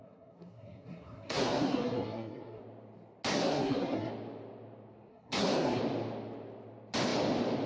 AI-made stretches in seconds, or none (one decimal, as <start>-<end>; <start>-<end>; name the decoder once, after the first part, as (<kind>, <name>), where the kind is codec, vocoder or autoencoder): 0.0-2.6 (codec, SNAC); 3.3-4.1; 5.1-5.8

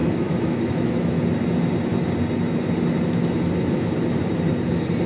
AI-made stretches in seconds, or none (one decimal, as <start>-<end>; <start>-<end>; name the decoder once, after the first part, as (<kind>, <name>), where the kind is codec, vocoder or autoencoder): 0.0-1.2 (autoencoder, DAC-VAE)

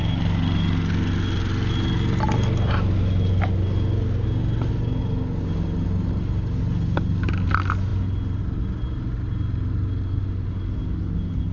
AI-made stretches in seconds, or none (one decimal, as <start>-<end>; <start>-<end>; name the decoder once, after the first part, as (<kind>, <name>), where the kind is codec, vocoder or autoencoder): none

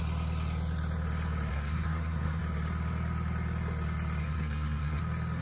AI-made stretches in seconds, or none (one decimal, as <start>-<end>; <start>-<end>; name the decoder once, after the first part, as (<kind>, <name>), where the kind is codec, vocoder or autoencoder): 1.5-2.4 (codec, SNAC); 4.2-5.0

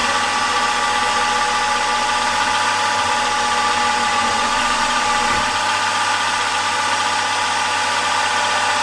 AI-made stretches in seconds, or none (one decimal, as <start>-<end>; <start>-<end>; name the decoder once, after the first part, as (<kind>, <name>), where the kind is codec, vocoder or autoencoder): 4.1-4.8 (vocoder, Vocos)

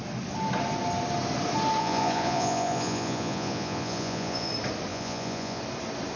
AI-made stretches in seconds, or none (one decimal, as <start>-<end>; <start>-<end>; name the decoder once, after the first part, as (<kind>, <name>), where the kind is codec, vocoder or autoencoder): 1.8-4.5 (vocoder, Vocos); 4.9-5.6

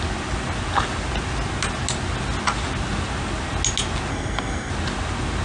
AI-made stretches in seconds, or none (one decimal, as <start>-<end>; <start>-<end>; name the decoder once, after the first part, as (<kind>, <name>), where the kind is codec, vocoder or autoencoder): 4.1-4.7 (codec, SNAC)

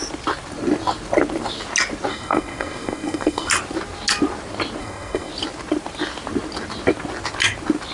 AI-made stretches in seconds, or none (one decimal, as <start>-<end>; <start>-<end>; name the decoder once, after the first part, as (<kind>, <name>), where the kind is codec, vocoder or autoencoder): 2.1-3.5 (codec, SNAC); 4.8-5.3